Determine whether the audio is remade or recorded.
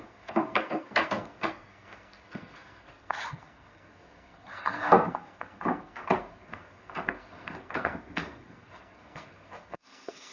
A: remade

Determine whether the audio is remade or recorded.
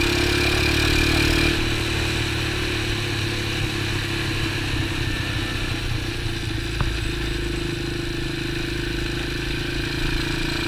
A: recorded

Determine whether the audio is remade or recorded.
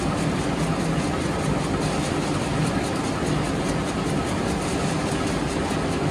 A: recorded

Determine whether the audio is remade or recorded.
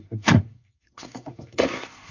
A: remade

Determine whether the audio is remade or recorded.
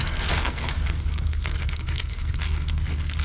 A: remade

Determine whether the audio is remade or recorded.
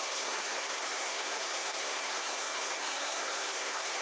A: remade